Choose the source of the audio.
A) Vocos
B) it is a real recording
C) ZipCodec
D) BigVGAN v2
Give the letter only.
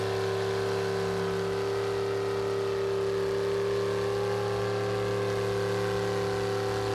B